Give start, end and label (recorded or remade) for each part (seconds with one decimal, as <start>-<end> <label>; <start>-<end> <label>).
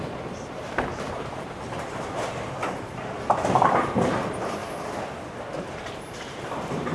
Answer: 0.0-4.6 remade; 4.6-5.6 recorded; 5.6-6.9 remade